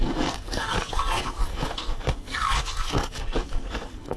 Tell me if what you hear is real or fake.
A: fake